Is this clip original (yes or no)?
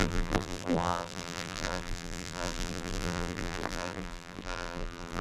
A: no